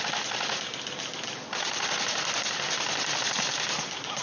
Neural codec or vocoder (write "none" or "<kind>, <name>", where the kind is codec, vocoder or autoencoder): none